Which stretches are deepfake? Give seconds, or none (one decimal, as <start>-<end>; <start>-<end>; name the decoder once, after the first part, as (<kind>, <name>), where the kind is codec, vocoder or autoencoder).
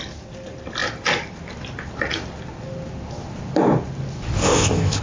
4.4-5.0 (codec, ZipCodec)